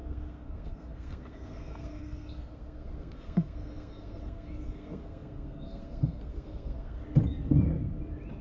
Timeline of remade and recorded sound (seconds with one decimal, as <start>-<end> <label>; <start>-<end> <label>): 0.0-7.0 remade; 7.0-8.4 recorded